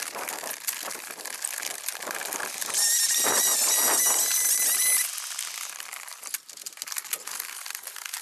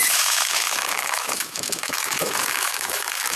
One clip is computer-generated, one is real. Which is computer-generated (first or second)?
second